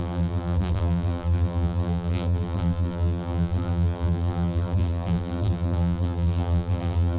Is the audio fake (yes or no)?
yes